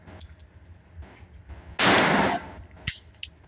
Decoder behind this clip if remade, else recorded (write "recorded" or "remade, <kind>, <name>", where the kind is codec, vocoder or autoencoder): recorded